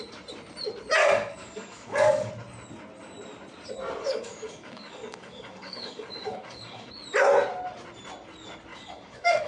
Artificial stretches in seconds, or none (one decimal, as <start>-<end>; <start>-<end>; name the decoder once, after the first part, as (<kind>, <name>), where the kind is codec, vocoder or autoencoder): 1.0-2.3 (codec, DAC); 4.0-6.9; 8.7-9.5